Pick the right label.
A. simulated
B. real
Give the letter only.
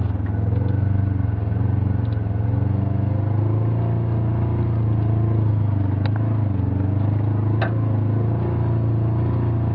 B